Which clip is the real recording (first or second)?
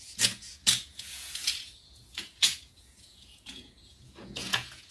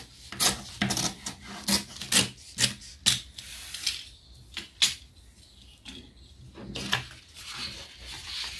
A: second